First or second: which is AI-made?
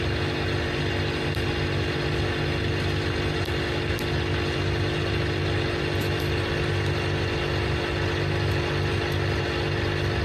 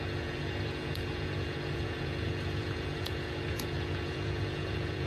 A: second